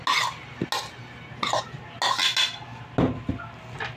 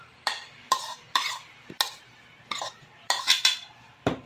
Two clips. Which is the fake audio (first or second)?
second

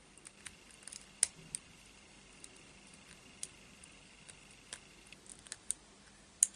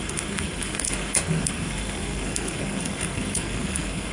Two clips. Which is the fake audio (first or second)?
second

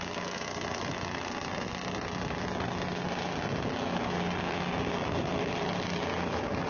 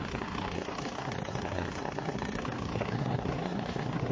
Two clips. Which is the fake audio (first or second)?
second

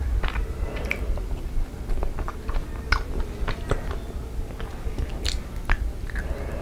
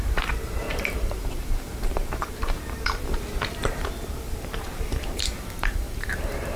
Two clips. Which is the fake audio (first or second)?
second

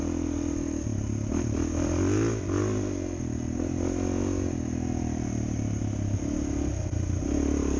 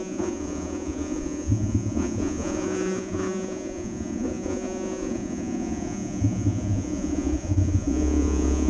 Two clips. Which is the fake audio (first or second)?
second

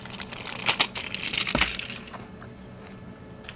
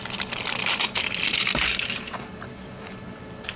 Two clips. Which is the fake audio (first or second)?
second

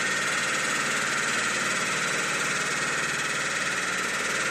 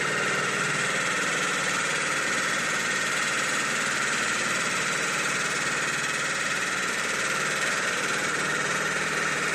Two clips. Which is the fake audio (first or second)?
second